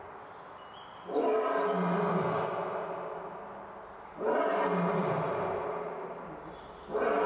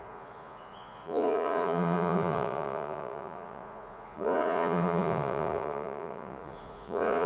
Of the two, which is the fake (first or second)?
second